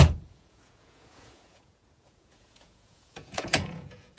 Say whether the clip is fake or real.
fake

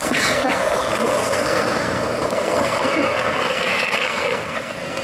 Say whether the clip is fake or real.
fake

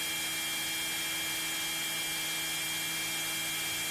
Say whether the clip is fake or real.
real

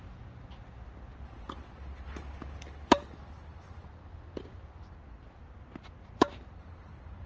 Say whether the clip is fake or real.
real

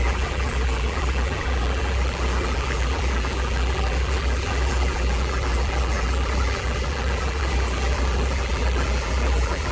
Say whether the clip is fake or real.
fake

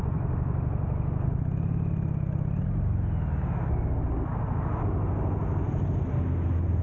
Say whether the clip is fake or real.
real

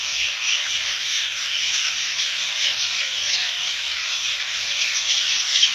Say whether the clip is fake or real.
fake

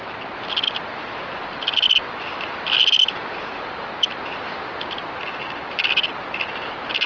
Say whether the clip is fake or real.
real